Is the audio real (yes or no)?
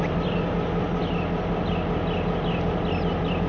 yes